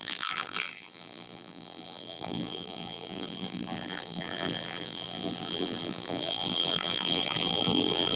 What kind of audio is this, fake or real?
fake